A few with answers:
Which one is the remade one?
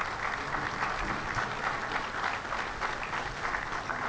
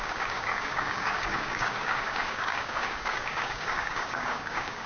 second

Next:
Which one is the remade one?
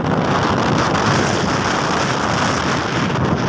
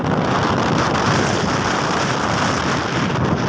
second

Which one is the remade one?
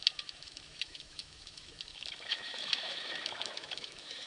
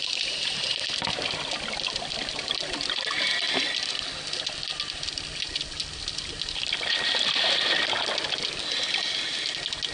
first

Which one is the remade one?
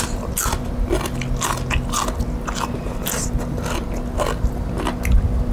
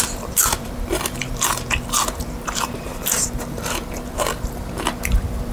second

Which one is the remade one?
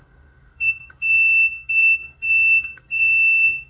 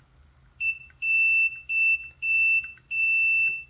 first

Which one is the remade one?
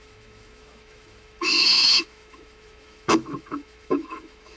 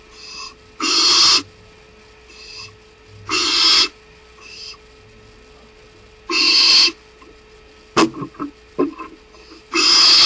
first